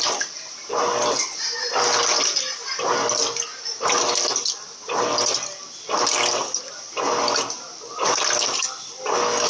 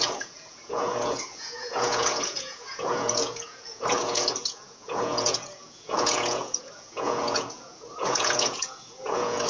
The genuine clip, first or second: first